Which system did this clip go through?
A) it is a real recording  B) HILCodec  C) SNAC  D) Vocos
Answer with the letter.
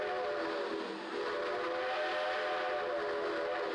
A